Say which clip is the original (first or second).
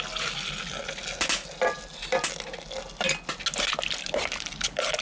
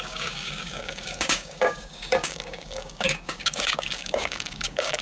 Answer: first